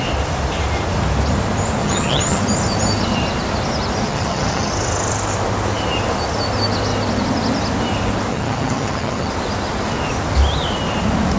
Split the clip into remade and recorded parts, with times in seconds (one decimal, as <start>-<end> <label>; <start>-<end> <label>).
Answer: 0.0-1.8 recorded; 1.8-2.4 remade; 2.4-4.1 recorded; 4.1-4.7 remade; 4.7-8.3 recorded; 8.3-9.3 remade; 9.3-11.4 recorded